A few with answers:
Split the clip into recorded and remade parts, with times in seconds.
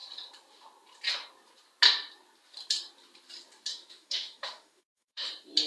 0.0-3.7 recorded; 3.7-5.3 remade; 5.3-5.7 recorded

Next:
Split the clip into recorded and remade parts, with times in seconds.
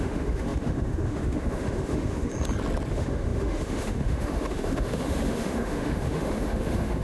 0.0-2.3 remade; 2.3-2.9 recorded; 2.9-7.0 remade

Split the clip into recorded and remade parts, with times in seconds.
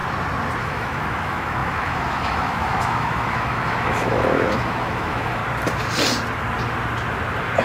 0.0-0.6 recorded; 0.6-5.4 remade; 5.4-7.6 recorded